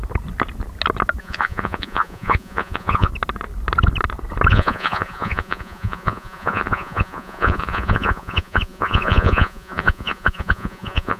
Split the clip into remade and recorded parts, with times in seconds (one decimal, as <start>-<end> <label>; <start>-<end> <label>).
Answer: 0.0-1.2 recorded; 1.2-3.1 remade; 3.1-4.5 recorded; 4.5-11.2 remade